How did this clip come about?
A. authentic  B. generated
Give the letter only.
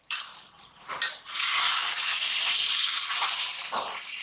B